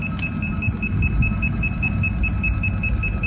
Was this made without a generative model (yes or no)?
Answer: yes